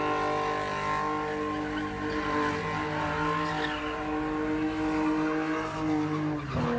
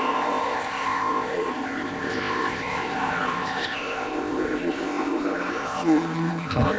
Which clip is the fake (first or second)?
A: second